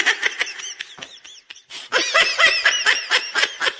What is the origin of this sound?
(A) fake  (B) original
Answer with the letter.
A